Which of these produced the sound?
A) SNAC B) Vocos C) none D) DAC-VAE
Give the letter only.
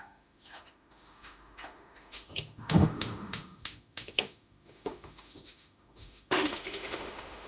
D